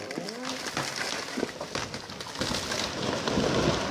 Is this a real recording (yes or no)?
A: yes